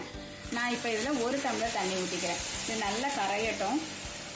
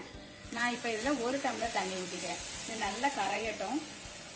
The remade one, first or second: second